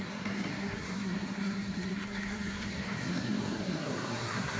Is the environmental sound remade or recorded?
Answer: remade